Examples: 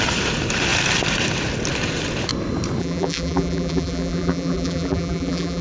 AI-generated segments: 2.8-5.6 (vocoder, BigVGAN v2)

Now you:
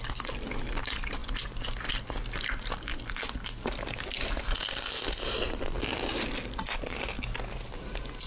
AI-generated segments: none

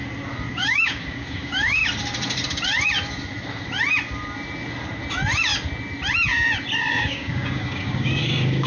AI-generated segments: 0.5-1.8 (codec, DAC); 6.9-8.7

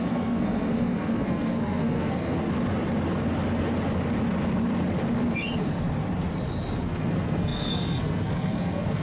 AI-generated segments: 0.0-2.4 (codec, SNAC); 6.8-9.0

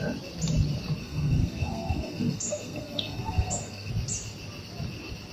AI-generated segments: 1.0-3.9 (codec, SNAC)

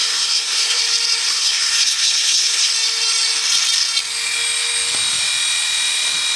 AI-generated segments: 0.0-0.8 (codec, SNAC); 1.3-2.7

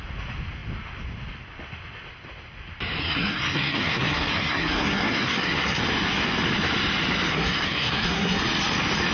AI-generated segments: 3.0-5.8 (codec, SNAC); 7.3-8.4